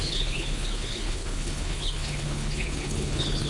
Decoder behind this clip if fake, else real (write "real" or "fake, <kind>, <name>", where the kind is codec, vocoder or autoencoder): fake, codec, HILCodec